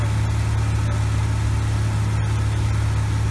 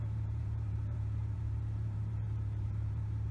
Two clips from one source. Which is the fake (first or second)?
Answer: second